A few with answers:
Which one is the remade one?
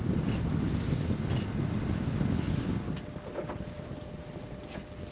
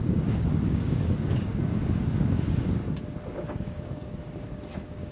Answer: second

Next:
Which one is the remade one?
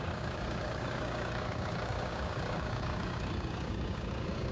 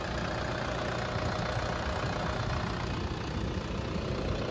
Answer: first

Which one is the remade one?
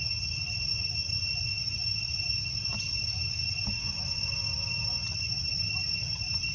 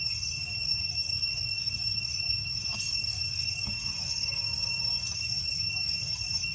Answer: second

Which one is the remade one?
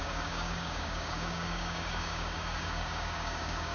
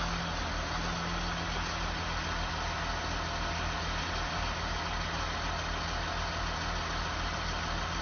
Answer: first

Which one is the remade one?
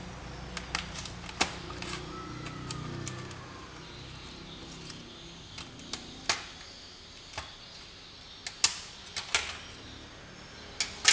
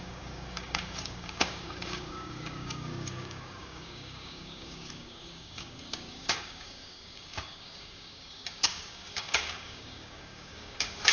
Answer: second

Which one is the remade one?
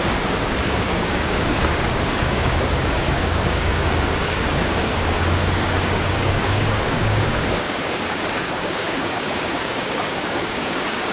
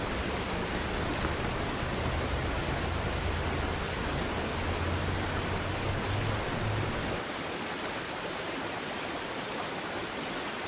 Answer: first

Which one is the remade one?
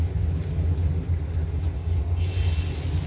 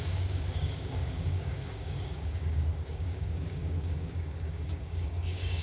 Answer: second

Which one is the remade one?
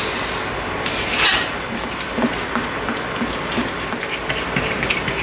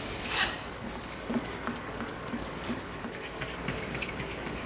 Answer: second